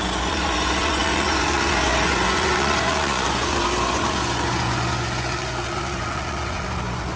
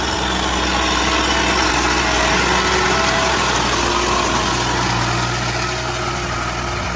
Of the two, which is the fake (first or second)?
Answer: first